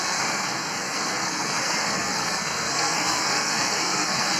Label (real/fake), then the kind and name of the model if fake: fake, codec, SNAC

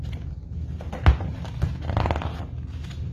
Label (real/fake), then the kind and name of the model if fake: real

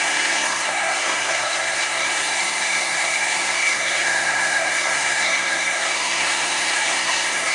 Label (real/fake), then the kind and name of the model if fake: fake, codec, SNAC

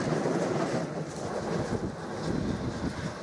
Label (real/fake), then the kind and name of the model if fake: real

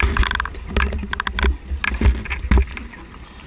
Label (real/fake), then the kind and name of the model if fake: real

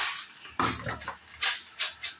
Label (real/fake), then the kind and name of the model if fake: real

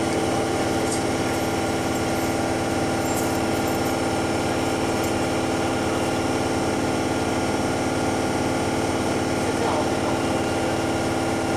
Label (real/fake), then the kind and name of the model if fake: real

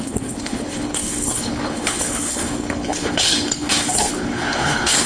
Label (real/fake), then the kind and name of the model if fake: fake, codec, HILCodec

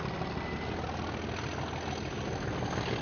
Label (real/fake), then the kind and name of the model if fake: real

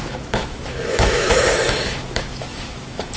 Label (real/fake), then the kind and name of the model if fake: fake, autoencoder, DAC-VAE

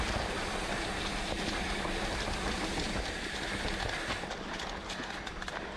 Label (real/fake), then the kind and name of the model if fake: real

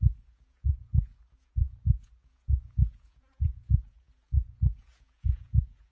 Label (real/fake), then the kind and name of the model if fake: fake, vocoder, Vocos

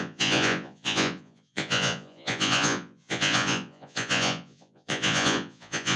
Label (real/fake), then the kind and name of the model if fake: fake, vocoder, Vocos